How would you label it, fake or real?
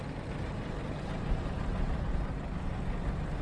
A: real